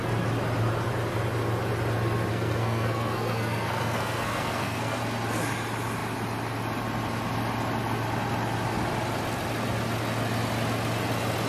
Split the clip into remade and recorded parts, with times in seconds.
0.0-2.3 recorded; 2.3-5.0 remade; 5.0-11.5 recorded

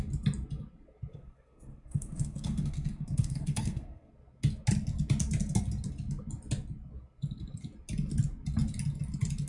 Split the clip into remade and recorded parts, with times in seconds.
0.0-1.1 recorded; 1.1-4.1 remade; 4.1-9.5 recorded

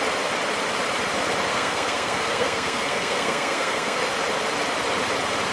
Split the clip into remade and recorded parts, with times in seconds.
0.0-1.5 recorded; 1.5-4.0 remade; 4.0-5.5 recorded

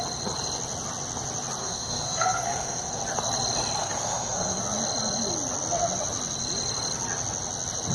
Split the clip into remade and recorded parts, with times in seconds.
0.0-1.6 recorded; 1.6-3.0 remade; 3.0-3.8 recorded; 3.8-4.6 remade; 4.6-7.9 recorded

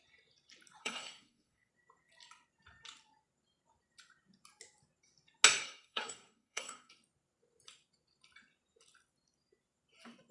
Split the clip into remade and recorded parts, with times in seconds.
0.0-0.8 recorded; 0.8-1.7 remade; 1.7-5.6 recorded; 5.6-6.9 remade; 6.9-10.3 recorded